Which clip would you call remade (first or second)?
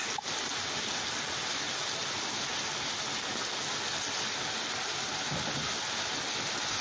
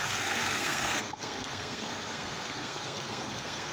second